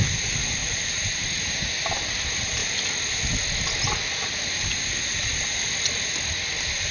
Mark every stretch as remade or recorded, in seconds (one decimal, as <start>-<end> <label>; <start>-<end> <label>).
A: 0.0-0.6 recorded; 0.6-1.7 remade; 1.7-6.9 recorded